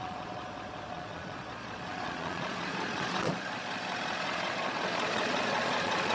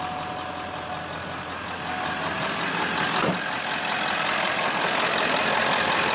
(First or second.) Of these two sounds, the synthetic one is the first